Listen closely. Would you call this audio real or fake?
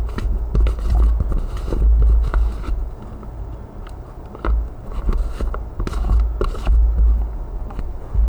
real